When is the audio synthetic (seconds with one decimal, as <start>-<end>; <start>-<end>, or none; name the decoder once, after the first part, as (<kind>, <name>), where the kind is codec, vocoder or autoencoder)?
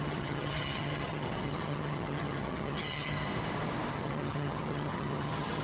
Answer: 0.0-3.3 (vocoder, HiFi-GAN); 3.9-5.6